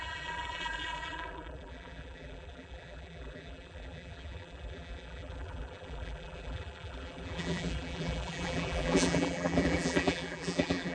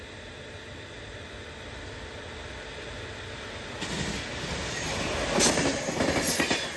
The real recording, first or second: second